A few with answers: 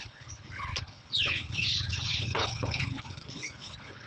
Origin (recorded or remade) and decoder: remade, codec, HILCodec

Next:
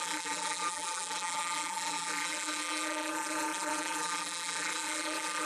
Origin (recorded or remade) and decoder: remade, vocoder, BigVGAN v2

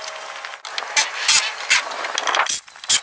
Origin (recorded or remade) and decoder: recorded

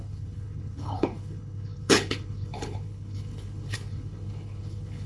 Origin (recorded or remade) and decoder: remade, codec, HILCodec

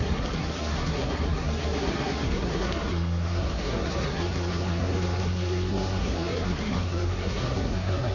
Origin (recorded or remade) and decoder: remade, codec, SNAC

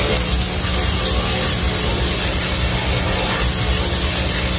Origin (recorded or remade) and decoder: recorded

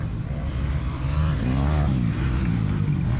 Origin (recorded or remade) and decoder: recorded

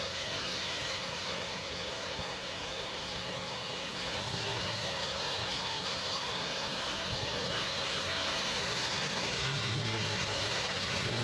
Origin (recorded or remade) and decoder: remade, codec, SNAC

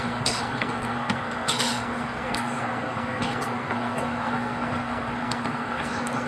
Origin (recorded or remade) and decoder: remade, codec, SNAC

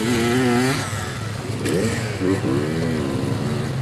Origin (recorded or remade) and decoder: recorded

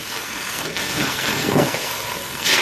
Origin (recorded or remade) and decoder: remade, codec, SNAC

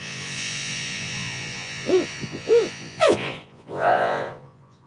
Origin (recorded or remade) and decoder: remade, vocoder, Vocos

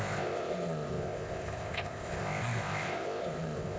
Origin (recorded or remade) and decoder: remade, codec, ZipCodec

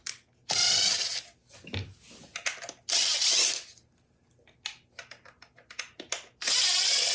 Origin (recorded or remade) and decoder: recorded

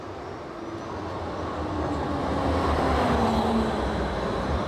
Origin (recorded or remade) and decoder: recorded